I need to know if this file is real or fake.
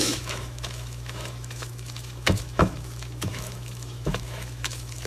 fake